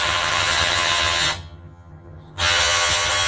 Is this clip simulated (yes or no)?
yes